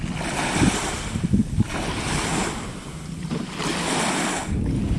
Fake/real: real